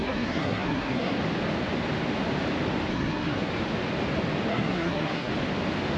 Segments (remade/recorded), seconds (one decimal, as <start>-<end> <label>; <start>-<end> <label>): 0.0-1.2 remade; 1.2-2.9 recorded; 2.9-3.5 remade; 3.5-4.5 recorded; 4.5-5.3 remade; 5.3-6.0 recorded